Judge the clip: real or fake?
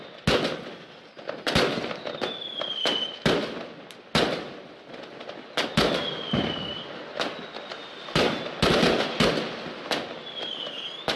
real